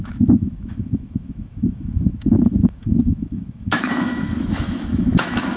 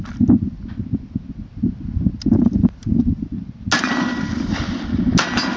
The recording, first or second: second